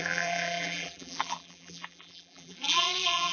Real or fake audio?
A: fake